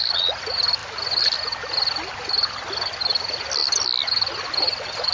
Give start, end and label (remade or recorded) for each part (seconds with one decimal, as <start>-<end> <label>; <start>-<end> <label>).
0.0-5.1 recorded